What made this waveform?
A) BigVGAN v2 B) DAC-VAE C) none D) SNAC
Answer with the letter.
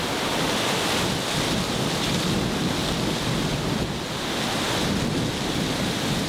C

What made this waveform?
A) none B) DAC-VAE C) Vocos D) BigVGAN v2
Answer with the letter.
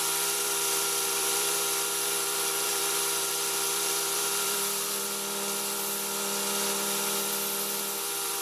D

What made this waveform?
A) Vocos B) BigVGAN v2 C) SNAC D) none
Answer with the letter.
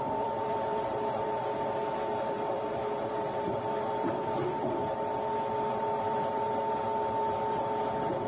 B